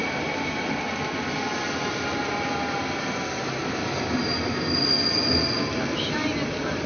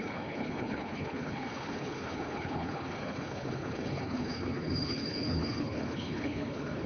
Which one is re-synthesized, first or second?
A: second